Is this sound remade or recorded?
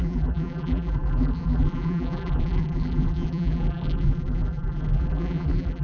remade